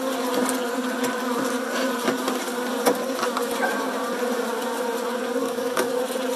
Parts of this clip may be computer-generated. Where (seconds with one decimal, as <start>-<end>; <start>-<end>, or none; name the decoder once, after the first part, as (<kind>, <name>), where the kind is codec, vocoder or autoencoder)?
5.4-6.0 (codec, DAC)